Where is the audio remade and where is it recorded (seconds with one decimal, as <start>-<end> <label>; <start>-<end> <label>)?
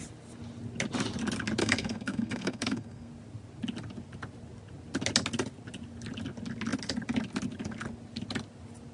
0.0-1.6 recorded; 1.6-3.1 remade; 3.1-8.9 recorded